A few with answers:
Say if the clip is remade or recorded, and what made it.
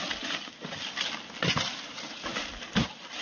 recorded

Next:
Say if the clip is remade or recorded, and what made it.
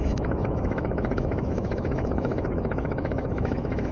remade, autoencoder, DAC-VAE